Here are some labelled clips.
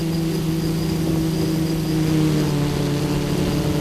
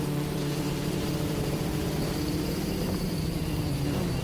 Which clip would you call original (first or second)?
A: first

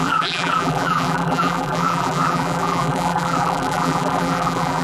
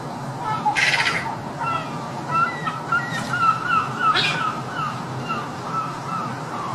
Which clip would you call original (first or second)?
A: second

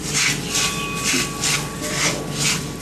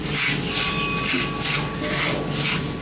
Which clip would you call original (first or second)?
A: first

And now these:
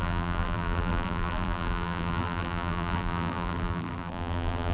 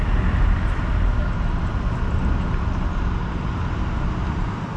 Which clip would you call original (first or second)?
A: second